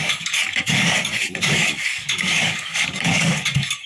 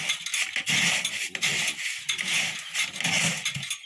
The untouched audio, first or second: second